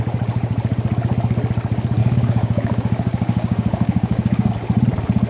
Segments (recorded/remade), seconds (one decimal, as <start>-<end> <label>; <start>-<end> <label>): 0.0-2.0 recorded; 2.0-4.5 remade; 4.5-5.3 recorded